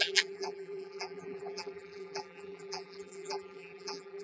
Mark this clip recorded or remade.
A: remade